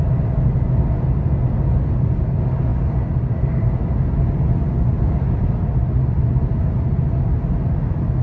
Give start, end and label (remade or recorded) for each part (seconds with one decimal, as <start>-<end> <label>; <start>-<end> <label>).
0.0-8.2 recorded